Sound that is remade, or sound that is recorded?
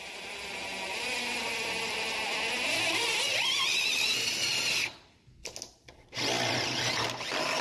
recorded